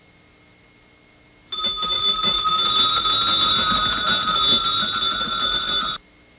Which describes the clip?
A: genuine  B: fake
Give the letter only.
A